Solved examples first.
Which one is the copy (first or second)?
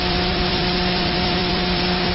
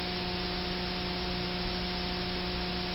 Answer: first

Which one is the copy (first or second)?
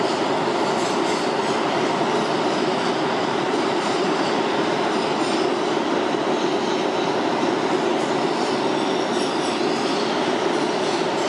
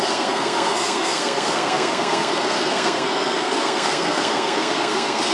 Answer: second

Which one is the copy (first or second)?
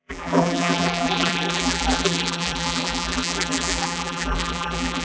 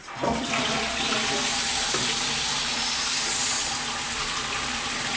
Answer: first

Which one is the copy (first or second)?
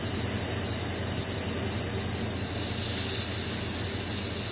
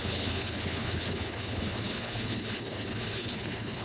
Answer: second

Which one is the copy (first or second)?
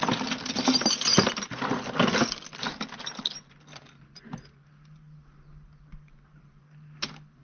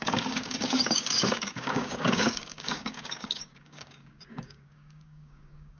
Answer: second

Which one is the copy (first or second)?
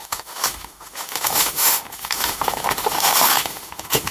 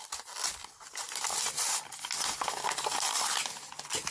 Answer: first